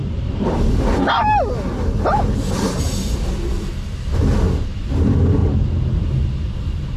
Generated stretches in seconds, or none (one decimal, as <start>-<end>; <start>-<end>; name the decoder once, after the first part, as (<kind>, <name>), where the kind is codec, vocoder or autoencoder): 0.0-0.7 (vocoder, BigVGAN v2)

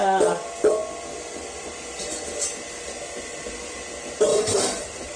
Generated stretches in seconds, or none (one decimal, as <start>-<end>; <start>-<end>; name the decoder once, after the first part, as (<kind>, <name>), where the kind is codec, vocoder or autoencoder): 4.3-5.2 (vocoder, BigVGAN v2)

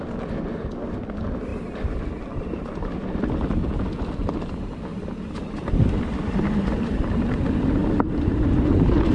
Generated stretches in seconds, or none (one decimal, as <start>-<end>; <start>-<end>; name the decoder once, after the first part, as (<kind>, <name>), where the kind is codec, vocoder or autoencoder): none

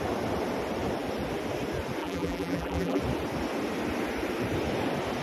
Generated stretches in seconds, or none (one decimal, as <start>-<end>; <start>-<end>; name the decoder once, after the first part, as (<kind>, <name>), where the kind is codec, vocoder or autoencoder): 2.0-3.0 (vocoder, BigVGAN v2)